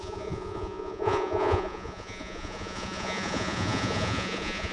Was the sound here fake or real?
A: fake